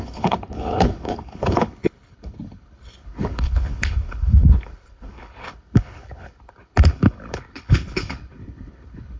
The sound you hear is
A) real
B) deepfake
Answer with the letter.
B